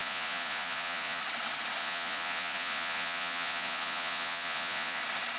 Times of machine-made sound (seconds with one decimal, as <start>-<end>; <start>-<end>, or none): 0.0-1.2; 1.8-5.0